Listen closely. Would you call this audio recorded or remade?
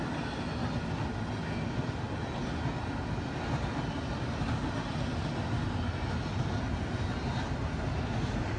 recorded